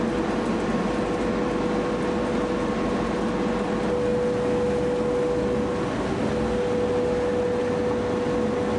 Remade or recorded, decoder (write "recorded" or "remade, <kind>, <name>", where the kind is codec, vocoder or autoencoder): recorded